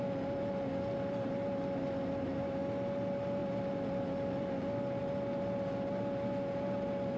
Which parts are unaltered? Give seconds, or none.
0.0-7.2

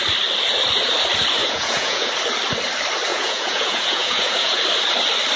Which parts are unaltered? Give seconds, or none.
0.0-1.4; 2.1-3.1; 4.6-5.4

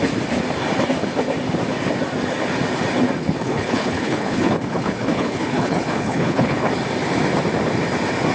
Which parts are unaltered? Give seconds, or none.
0.0-3.2; 6.7-8.3

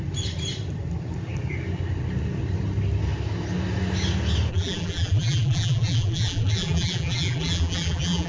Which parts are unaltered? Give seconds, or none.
0.0-4.5